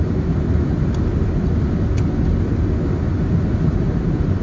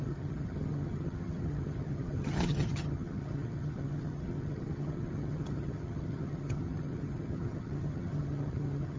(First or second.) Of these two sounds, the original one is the first